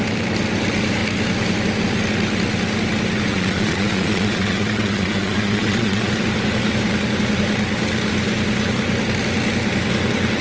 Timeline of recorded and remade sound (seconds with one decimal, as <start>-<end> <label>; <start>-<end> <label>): 0.0-3.3 recorded; 3.3-6.1 remade; 6.1-10.4 recorded